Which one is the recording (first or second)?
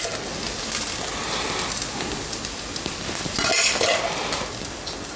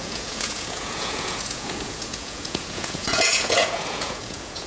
first